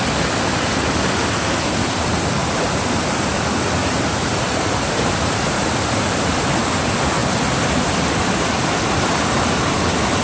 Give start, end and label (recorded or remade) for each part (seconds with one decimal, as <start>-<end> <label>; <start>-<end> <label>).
0.0-2.4 recorded; 2.4-3.4 remade; 3.4-3.8 recorded; 3.8-6.0 remade; 6.0-10.2 recorded